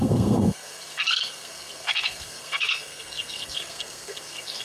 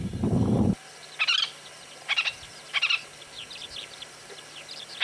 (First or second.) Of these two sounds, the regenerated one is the first